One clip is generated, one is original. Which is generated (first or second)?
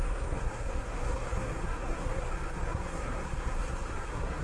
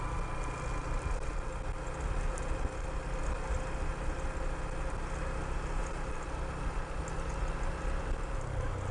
first